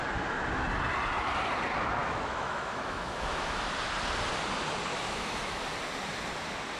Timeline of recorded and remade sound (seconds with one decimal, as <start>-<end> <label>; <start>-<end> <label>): 0.0-2.0 recorded; 2.0-3.6 remade; 3.6-4.9 recorded; 4.9-5.6 remade; 5.6-6.8 recorded